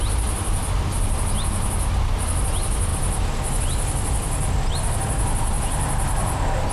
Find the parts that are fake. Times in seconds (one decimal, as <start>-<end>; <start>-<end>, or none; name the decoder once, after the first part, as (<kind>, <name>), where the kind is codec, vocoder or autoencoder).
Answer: none